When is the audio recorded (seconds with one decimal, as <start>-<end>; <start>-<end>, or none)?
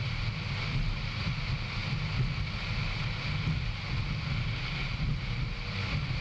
0.0-6.2